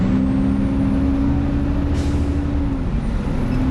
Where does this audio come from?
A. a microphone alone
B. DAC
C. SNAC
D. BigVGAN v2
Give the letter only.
A